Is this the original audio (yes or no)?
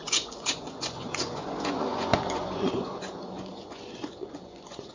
no